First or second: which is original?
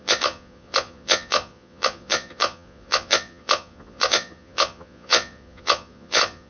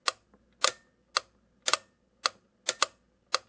second